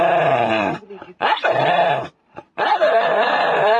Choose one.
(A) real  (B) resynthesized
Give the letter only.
B